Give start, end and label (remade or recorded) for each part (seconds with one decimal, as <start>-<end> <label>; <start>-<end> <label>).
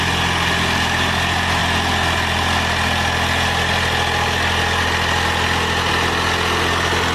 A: 0.0-7.1 recorded